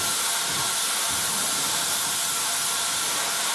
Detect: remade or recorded recorded